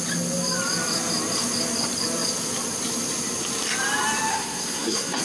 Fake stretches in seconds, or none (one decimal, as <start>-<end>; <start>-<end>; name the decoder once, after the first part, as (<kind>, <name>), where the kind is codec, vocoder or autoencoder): 4.3-5.2 (codec, SNAC)